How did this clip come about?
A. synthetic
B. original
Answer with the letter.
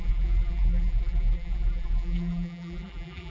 A